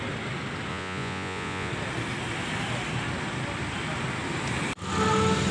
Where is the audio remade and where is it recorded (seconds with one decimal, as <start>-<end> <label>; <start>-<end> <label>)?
0.0-0.7 recorded; 0.7-1.7 remade; 1.7-5.5 recorded